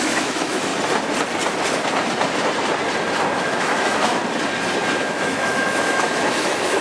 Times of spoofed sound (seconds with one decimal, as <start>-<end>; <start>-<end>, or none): 0.0-0.7; 3.4-4.2; 5.0-6.8